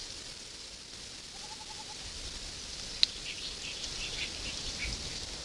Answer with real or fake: real